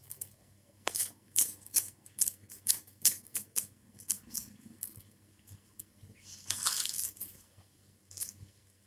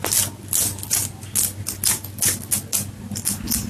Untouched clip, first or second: second